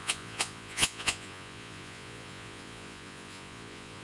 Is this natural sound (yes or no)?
no